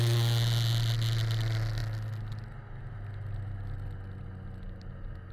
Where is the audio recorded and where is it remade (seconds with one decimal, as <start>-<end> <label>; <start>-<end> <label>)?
0.0-5.3 recorded